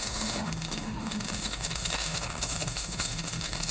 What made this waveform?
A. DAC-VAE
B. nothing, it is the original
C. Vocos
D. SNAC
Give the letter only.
A